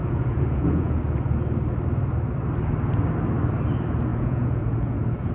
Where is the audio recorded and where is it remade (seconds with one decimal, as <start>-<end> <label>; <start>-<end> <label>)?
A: 0.0-1.0 remade; 1.0-4.1 recorded; 4.1-5.3 remade